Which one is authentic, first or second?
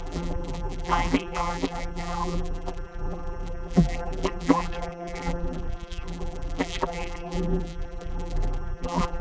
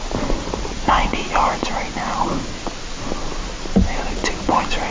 second